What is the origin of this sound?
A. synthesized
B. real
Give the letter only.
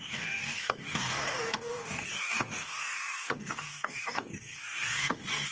A